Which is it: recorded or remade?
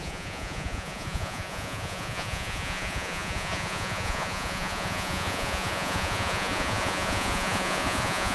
remade